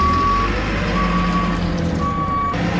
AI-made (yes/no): no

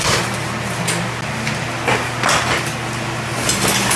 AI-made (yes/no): no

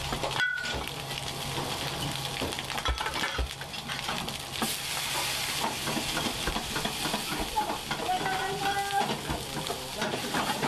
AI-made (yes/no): no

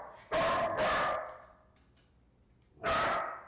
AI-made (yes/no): no